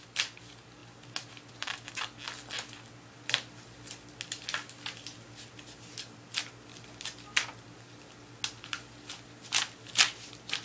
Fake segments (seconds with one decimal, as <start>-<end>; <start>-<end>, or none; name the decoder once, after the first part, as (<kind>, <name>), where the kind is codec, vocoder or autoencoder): none